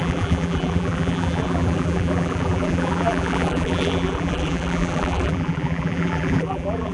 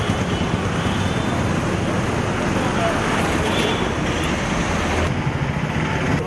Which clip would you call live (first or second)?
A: second